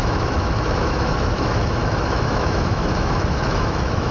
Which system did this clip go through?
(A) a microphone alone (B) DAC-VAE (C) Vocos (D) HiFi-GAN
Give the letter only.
B